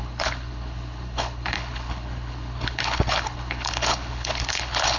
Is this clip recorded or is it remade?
remade